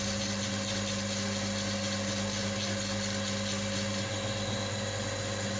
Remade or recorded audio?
recorded